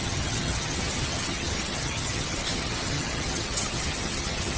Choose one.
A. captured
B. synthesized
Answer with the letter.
B